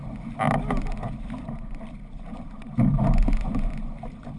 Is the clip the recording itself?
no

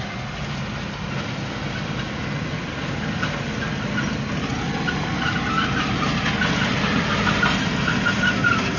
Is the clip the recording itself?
yes